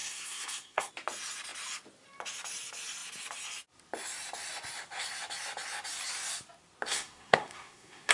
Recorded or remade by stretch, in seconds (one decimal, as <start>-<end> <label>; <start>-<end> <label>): 0.0-0.9 remade; 0.9-6.9 recorded; 6.9-8.1 remade